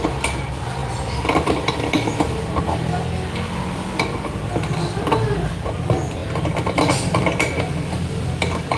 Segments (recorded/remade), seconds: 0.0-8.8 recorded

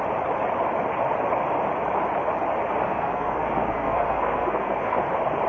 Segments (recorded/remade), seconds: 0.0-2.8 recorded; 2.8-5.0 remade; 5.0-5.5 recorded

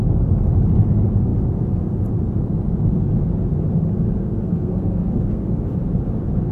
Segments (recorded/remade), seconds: 0.0-4.2 recorded; 4.2-5.5 remade; 5.5-6.5 recorded

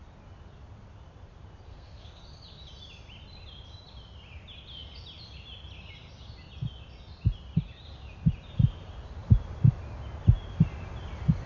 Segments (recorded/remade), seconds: 0.0-1.7 recorded; 1.7-2.2 remade; 2.2-11.5 recorded

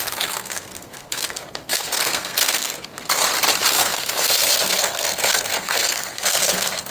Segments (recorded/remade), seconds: 0.0-3.2 remade; 3.2-3.7 recorded; 3.7-6.9 remade

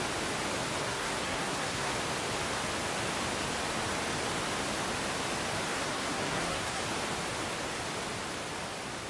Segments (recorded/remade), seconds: 0.0-0.8 recorded; 0.8-1.9 remade; 1.9-5.7 recorded; 5.7-6.8 remade; 6.8-9.1 recorded

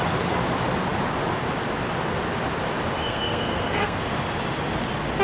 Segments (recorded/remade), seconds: 0.0-3.0 recorded; 3.0-4.0 remade; 4.0-5.2 recorded